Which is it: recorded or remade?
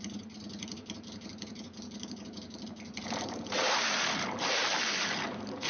remade